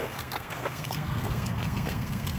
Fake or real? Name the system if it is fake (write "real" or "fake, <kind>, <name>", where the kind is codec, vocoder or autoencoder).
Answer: fake, codec, SNAC